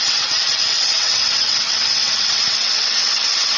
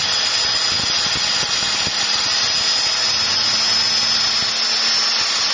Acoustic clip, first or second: second